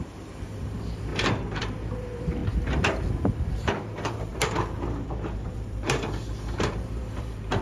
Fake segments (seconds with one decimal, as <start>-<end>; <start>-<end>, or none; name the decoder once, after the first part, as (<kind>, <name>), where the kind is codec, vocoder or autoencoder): 0.0-2.4 (vocoder, BigVGAN v2); 3.5-7.6